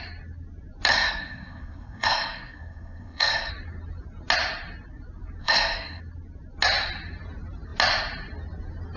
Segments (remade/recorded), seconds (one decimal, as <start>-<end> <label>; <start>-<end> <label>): 0.0-0.9 recorded; 0.9-3.5 remade; 3.5-5.4 recorded; 5.4-6.0 remade; 6.0-9.0 recorded